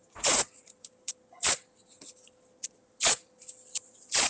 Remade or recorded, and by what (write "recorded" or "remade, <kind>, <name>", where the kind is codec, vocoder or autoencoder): recorded